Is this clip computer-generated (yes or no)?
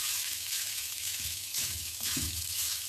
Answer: yes